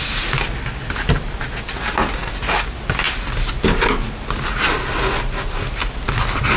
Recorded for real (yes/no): yes